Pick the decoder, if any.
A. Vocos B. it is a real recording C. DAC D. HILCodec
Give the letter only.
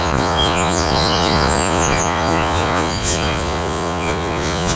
A